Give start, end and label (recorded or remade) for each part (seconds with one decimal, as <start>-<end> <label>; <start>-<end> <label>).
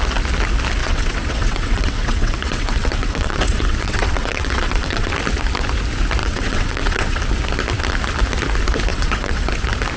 0.0-0.8 recorded; 0.8-5.1 remade; 5.1-6.2 recorded; 6.2-7.2 remade; 7.2-8.9 recorded; 8.9-9.5 remade; 9.5-10.0 recorded